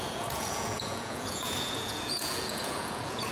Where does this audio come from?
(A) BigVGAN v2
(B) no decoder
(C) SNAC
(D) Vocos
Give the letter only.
D